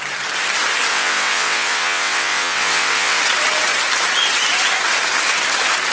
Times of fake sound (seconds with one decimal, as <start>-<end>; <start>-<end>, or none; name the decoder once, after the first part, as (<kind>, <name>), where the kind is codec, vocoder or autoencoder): 0.9-3.2 (vocoder, WaveNeXt)